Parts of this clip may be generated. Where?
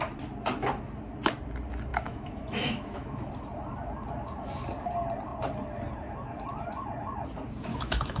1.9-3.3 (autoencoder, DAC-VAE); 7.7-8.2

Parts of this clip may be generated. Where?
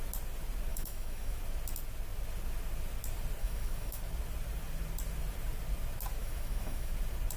0.7-1.4 (autoencoder, DAC-VAE); 3.4-4.0; 6.2-6.9